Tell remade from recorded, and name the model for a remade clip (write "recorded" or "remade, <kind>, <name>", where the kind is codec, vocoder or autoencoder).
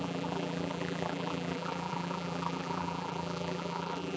remade, vocoder, BigVGAN v2